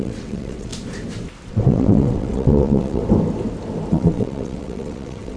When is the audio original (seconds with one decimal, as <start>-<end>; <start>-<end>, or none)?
0.7-1.5; 3.0-3.9